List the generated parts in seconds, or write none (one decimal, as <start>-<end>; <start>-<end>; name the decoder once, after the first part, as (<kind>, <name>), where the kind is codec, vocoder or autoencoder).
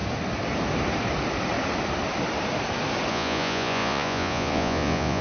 3.1-5.2 (vocoder, Vocos)